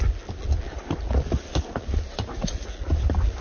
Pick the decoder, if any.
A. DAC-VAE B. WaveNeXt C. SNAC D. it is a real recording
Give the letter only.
D